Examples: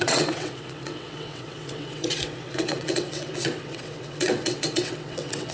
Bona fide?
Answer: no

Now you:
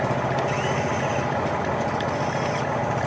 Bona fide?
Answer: yes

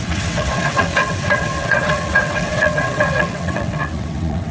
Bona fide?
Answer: no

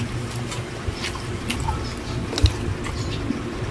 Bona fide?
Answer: yes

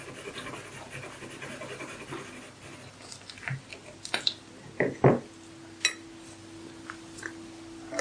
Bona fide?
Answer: yes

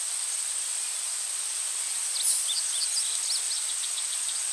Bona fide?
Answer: yes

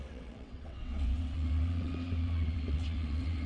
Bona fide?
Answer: no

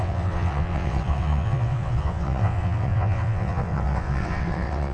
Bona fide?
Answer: no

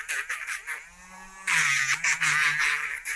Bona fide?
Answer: yes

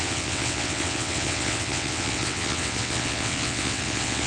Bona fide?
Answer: no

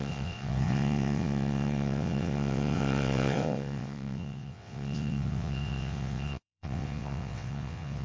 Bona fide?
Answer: no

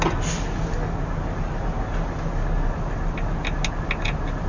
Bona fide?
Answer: yes